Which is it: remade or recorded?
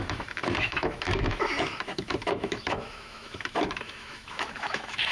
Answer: remade